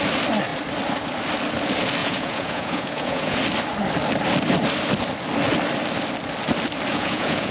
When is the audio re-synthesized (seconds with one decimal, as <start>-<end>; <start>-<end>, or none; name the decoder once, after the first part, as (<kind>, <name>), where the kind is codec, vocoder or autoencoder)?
2.0-3.4 (vocoder, Vocos); 6.9-7.5

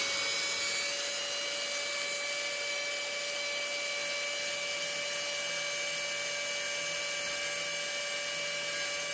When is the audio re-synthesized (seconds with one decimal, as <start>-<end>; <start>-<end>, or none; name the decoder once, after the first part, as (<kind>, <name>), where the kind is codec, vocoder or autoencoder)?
none

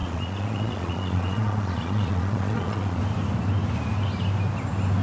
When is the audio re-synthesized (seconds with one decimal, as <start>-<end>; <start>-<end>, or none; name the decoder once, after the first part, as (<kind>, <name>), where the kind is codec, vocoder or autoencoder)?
0.0-3.0 (vocoder, Vocos)

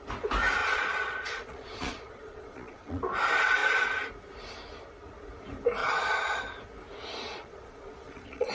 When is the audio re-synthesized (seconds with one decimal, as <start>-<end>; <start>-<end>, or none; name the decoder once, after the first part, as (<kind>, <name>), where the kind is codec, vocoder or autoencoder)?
0.6-3.0 (vocoder, Vocos); 5.8-6.4; 7.3-8.5